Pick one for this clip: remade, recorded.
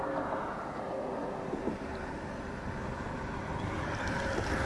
recorded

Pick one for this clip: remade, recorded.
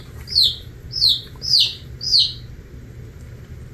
recorded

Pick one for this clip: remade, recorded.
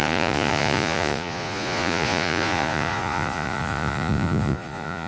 remade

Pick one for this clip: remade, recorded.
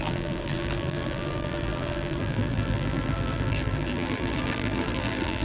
remade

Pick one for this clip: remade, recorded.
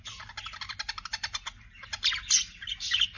recorded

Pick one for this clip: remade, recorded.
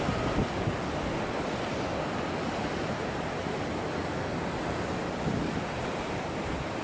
recorded